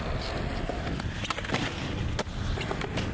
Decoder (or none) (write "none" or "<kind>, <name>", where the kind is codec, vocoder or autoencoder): none